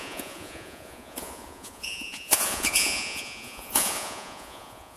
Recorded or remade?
remade